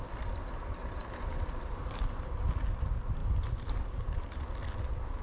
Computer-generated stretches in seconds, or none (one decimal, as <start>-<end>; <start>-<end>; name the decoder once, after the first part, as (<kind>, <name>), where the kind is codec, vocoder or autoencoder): 0.8-2.0 (vocoder, BigVGAN v2); 3.2-4.5